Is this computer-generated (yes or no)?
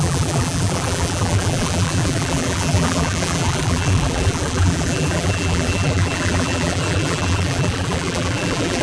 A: yes